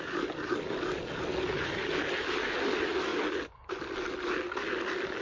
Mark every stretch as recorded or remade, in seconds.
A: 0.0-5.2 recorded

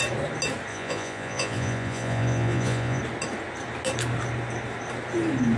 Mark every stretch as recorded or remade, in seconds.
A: 0.0-0.7 recorded; 0.7-3.0 remade; 3.0-5.6 recorded

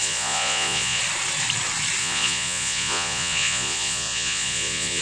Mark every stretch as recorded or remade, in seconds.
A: 0.0-1.0 remade; 1.0-2.0 recorded; 2.0-5.0 remade

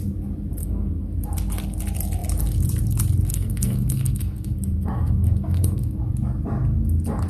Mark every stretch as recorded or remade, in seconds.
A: 0.0-0.6 recorded; 0.6-1.1 remade; 1.1-3.3 recorded; 3.3-6.0 remade; 6.0-7.3 recorded

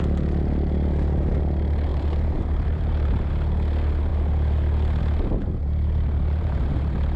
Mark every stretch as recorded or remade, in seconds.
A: 0.0-1.9 recorded; 1.9-3.3 remade; 3.3-5.6 recorded; 5.6-7.2 remade

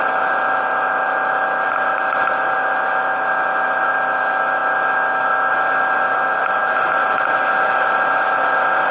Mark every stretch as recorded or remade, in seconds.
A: 0.0-8.9 recorded